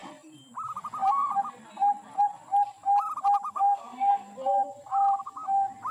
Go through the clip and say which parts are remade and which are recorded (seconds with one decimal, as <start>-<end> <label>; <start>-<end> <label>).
0.0-3.5 recorded; 3.5-4.3 remade; 4.3-5.9 recorded